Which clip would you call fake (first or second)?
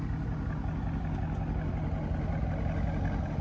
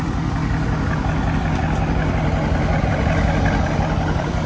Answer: second